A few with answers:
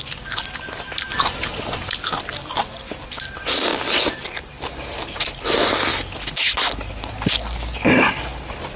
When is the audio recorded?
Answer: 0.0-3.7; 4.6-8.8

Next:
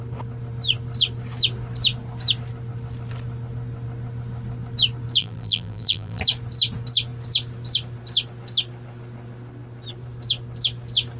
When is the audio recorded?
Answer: 0.0-5.2; 6.2-11.2

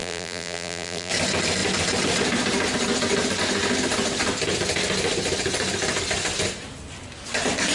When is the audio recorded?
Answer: 1.1-7.7

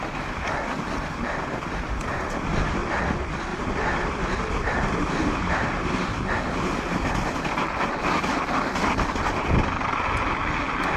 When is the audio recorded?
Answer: 0.0-3.5; 5.9-11.0

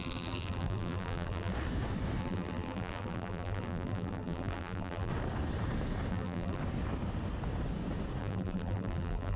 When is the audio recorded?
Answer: 1.5-2.2; 5.1-6.1; 6.6-8.2

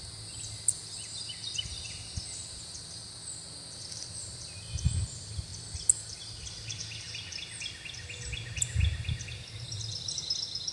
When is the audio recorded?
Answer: 0.0-10.7

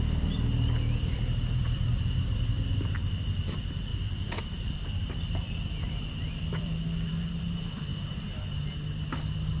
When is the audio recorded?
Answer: 3.9-5.2; 7.9-9.6